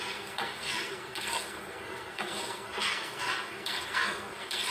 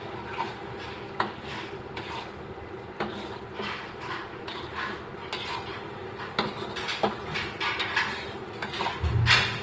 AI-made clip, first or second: first